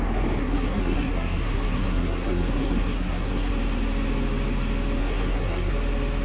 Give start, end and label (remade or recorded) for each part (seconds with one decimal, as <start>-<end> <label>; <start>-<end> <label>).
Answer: 0.0-0.4 recorded; 0.4-3.5 remade; 3.5-5.0 recorded; 5.0-5.7 remade; 5.7-6.2 recorded